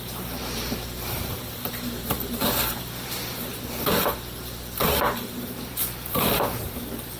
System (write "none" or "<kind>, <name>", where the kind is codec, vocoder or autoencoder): vocoder, BigVGAN v2